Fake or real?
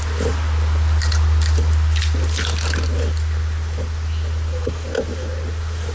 real